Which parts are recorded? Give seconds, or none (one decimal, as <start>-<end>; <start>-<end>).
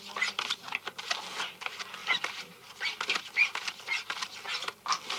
0.0-2.0